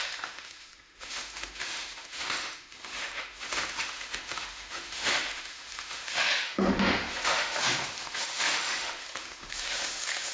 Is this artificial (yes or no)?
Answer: yes